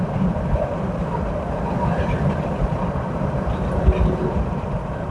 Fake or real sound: fake